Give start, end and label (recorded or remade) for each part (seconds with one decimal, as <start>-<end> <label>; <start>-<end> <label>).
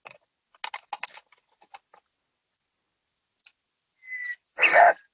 0.0-5.1 recorded